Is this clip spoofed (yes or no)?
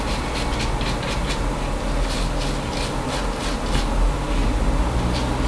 no